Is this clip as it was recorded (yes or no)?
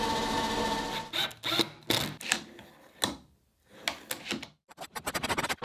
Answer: yes